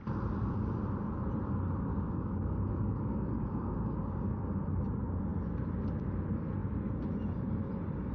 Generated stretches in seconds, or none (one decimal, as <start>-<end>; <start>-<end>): 1.9-4.6